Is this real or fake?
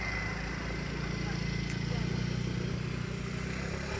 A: real